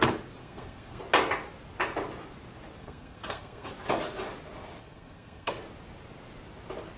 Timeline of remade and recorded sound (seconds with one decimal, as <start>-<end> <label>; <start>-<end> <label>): 0.0-0.4 recorded; 0.4-1.0 remade; 1.0-2.8 recorded; 2.8-3.7 remade; 3.7-4.8 recorded; 4.8-5.5 remade; 5.5-7.0 recorded